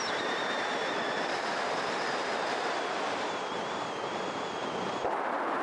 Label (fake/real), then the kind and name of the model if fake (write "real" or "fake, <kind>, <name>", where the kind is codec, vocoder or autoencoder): real